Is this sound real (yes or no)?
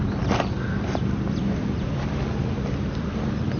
yes